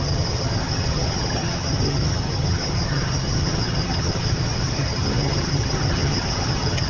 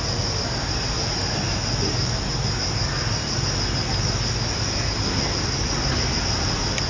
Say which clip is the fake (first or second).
first